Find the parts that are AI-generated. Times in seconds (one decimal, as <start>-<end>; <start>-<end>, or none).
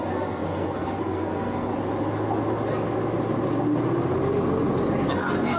0.0-1.7; 5.1-5.6